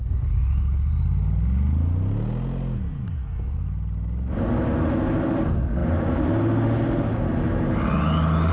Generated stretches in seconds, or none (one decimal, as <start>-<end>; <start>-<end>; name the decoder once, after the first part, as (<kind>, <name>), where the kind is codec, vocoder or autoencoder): 5.8-6.4 (vocoder, BigVGAN v2)

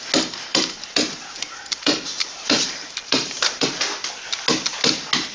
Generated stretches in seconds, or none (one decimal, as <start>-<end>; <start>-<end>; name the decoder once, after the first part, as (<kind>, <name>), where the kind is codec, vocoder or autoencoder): 0.5-3.7 (vocoder, BigVGAN v2)

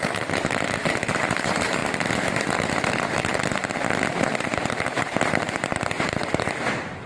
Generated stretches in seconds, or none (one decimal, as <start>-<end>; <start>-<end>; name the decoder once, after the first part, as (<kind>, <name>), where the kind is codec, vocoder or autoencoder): 0.0-1.8 (vocoder, BigVGAN v2); 2.8-3.3; 4.1-7.1

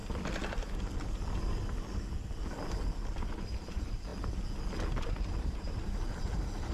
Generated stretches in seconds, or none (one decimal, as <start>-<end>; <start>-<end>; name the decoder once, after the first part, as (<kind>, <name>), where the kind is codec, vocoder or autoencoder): 3.4-4.1 (vocoder, BigVGAN v2); 5.0-6.7

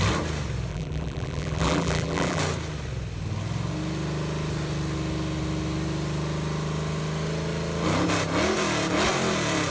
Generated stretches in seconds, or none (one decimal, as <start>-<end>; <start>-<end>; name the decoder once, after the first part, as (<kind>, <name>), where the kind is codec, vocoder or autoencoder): 0.7-2.4 (vocoder, BigVGAN v2)